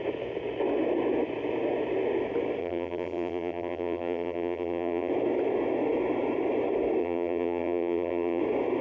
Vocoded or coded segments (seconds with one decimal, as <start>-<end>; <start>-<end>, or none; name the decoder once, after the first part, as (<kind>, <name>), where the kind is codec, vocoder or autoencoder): 2.6-5.1 (vocoder, BigVGAN v2); 7.0-8.4